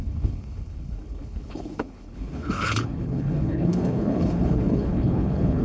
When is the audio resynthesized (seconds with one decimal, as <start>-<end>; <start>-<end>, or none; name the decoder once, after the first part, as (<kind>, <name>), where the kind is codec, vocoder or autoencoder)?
0.0-5.6 (codec, HILCodec)